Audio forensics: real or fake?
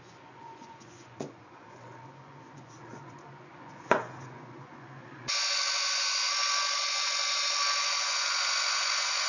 fake